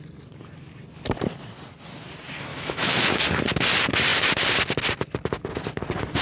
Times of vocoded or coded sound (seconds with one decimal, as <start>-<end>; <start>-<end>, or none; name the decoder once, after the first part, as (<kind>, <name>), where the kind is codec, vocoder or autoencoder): 2.5-3.2 (autoencoder, DAC-VAE)